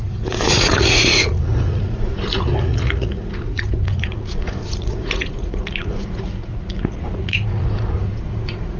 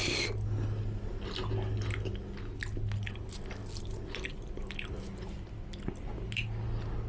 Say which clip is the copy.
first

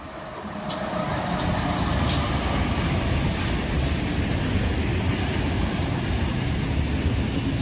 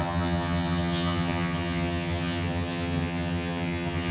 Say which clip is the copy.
second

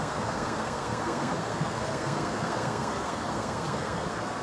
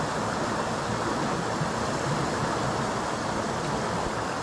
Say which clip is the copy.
first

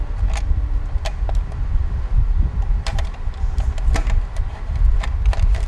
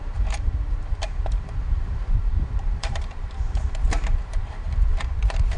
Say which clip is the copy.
second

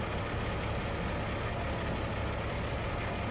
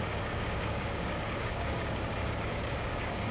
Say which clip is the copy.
second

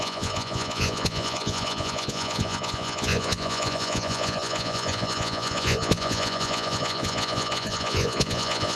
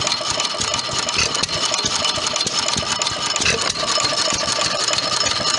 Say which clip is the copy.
first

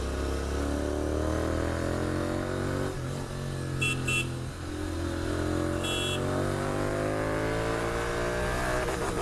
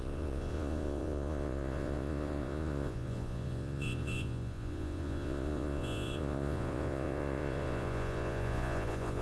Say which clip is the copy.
second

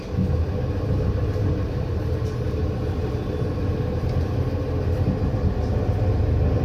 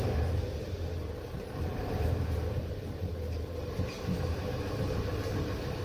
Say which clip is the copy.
second